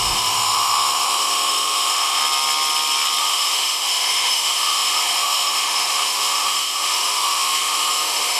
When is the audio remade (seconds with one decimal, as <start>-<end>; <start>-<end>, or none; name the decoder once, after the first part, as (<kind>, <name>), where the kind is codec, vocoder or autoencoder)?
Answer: 0.0-2.2 (autoencoder, DAC-VAE); 3.2-8.4